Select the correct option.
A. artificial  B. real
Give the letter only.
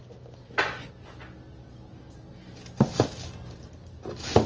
B